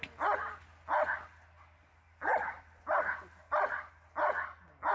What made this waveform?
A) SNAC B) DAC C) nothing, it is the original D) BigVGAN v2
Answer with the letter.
C